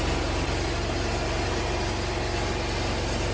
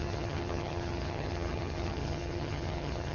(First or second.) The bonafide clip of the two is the first